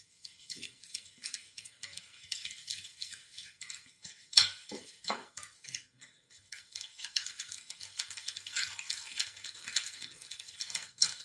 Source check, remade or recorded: remade